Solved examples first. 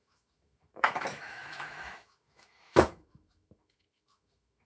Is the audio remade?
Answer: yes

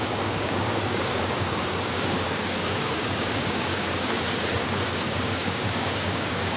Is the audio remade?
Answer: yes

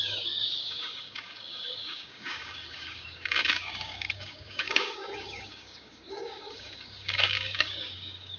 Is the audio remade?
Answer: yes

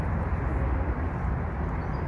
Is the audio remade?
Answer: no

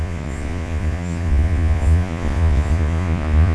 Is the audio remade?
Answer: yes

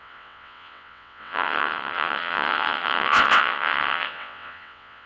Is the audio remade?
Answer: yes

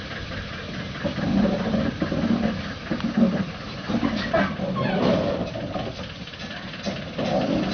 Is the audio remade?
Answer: no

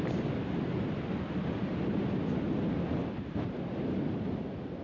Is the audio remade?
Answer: no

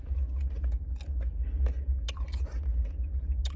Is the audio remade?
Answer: no